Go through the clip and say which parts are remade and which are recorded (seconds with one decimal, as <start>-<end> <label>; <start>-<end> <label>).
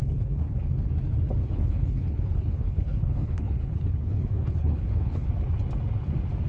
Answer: 0.0-0.9 remade; 0.9-1.4 recorded; 1.4-5.3 remade; 5.3-6.5 recorded